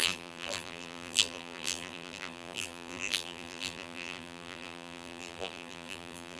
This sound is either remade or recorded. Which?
remade